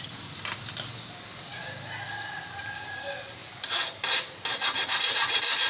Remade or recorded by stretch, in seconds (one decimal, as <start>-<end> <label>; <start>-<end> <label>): 0.0-5.7 recorded